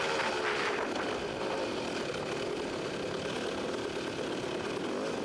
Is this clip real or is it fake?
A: real